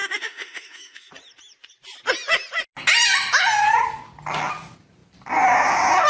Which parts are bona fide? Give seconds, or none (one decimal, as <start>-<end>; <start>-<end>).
1.1-6.1

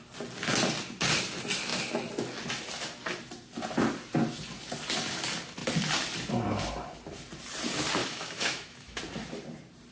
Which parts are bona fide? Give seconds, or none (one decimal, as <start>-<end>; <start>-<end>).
0.0-8.0; 9.0-9.9

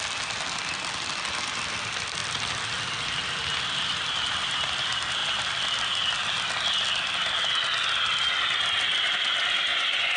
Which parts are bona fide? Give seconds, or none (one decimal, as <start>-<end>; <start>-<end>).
0.0-9.7

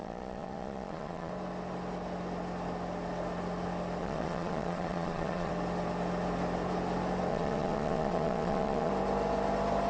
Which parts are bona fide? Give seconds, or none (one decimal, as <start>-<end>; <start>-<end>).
1.3-4.0; 5.5-7.3; 8.9-9.9

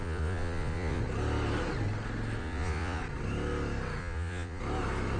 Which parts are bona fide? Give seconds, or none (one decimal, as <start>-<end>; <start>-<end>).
1.0-2.4; 3.0-4.0; 4.6-5.2

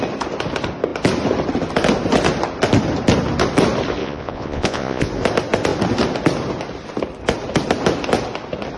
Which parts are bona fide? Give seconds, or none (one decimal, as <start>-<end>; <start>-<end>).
0.0-4.0; 5.1-8.8

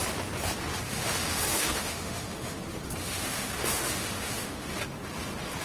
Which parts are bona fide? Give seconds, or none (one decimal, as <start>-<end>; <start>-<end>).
0.0-0.9; 2.6-3.0; 4.8-5.6